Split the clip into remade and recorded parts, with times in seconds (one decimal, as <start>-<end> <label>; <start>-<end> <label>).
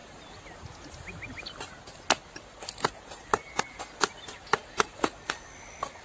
0.0-6.0 recorded